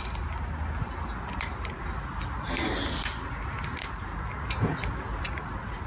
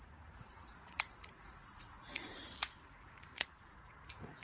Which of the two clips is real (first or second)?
first